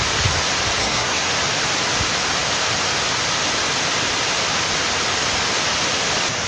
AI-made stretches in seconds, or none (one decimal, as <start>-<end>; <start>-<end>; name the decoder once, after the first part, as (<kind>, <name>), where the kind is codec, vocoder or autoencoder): 0.8-1.3 (codec, SNAC)